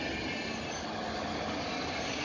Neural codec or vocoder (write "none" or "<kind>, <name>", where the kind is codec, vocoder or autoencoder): none